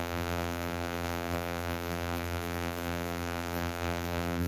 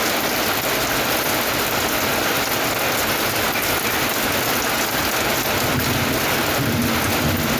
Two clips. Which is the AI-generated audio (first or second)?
first